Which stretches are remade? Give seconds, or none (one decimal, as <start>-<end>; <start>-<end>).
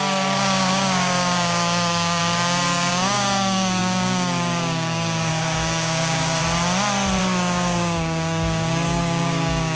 0.0-6.4; 7.2-9.8